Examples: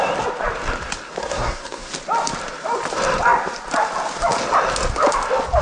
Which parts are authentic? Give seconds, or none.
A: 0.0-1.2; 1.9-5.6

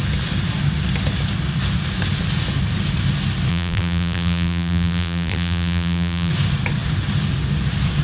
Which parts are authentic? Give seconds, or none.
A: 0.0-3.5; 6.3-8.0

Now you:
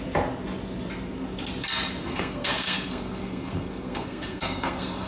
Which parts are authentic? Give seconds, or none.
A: 0.0-2.0

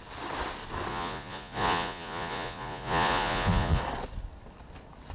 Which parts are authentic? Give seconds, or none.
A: 0.0-0.9; 3.8-5.1

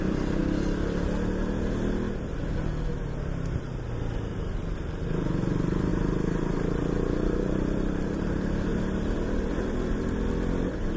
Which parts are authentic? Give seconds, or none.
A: 0.0-5.9; 10.3-11.0

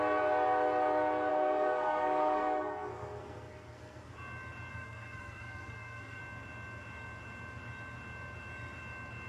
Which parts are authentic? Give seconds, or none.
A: 0.0-1.3; 4.1-4.7; 6.2-9.3

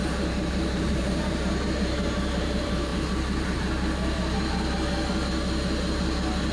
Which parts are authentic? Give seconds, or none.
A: 2.9-6.5